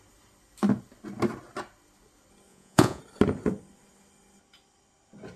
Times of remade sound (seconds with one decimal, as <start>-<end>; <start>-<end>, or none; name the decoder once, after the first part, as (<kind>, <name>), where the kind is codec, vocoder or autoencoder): 2.5-3.0 (vocoder, Vocos)